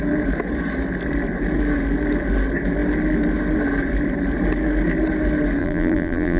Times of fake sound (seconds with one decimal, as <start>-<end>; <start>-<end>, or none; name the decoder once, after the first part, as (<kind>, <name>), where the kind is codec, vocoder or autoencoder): 5.6-6.4 (vocoder, BigVGAN v2)